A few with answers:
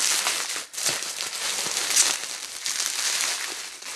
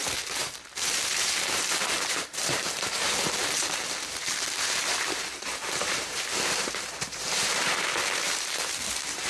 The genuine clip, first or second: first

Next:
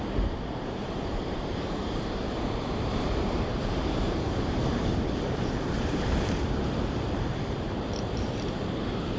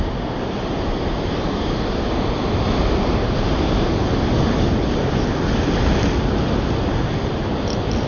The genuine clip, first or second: second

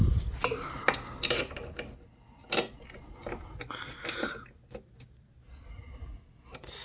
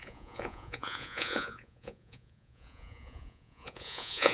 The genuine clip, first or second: first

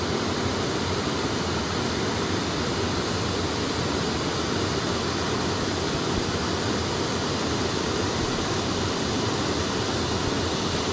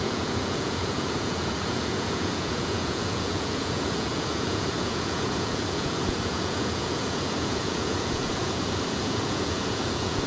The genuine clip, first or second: first